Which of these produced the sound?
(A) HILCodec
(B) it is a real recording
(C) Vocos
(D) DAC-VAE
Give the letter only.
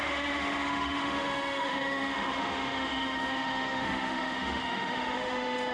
D